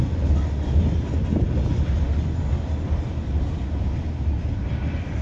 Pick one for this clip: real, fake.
real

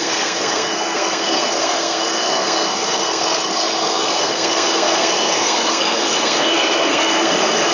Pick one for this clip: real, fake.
fake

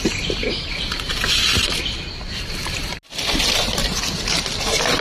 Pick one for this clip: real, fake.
real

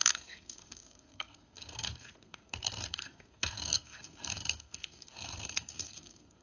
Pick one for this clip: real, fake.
fake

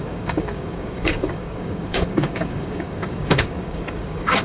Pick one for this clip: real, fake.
fake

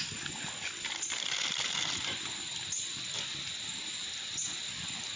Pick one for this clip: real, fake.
real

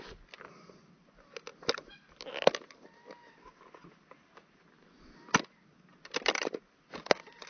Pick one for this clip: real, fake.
real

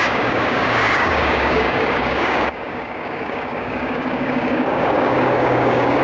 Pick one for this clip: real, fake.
fake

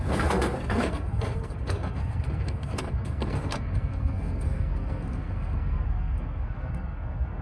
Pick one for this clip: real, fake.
fake